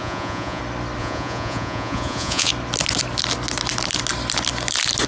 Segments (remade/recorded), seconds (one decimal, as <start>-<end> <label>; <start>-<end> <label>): 0.0-0.6 remade; 0.6-1.0 recorded; 1.0-2.5 remade; 2.5-5.1 recorded